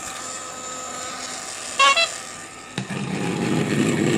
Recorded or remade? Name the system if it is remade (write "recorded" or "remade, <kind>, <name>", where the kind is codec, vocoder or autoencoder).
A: recorded